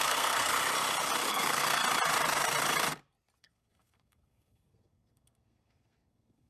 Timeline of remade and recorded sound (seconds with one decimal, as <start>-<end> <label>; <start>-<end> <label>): 0.0-0.5 remade; 0.5-1.3 recorded; 1.3-1.8 remade; 1.8-3.4 recorded; 3.4-6.5 remade